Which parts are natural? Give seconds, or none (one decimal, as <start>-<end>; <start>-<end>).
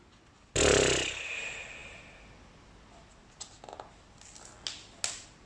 0.0-5.5